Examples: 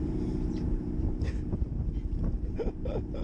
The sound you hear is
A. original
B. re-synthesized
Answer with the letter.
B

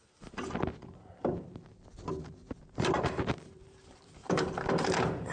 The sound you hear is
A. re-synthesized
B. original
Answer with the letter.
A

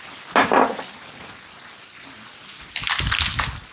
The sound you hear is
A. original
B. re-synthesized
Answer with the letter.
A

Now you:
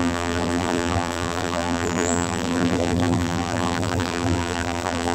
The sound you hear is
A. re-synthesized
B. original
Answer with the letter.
A